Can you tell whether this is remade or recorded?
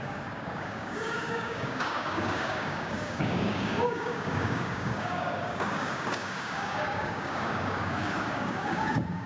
remade